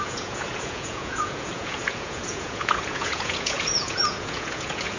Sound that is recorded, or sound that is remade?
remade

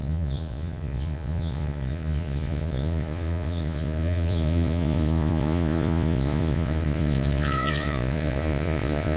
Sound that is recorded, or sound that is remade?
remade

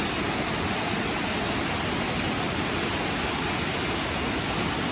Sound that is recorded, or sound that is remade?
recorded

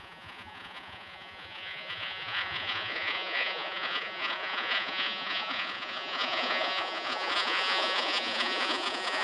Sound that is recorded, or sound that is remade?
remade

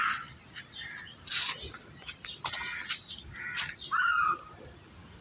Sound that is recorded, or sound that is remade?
recorded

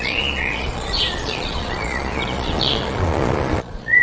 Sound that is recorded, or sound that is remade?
remade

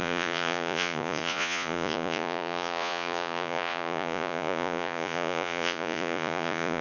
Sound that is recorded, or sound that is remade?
remade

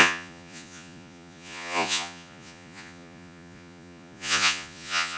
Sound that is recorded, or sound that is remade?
remade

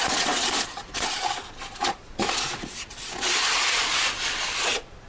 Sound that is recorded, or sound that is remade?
remade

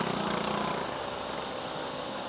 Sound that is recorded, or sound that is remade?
recorded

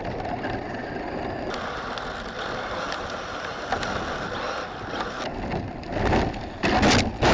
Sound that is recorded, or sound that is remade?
recorded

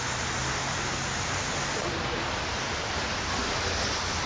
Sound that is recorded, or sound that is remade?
recorded